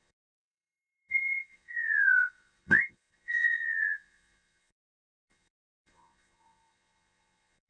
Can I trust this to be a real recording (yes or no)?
no